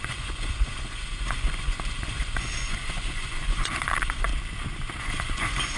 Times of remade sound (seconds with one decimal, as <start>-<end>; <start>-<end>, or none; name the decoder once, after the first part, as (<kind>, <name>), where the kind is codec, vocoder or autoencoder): 0.0-4.3 (vocoder, Vocos); 5.0-5.8